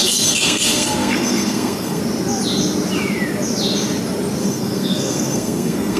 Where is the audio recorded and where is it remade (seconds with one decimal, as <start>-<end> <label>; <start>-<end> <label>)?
0.0-2.0 remade; 2.0-4.4 recorded; 4.4-6.0 remade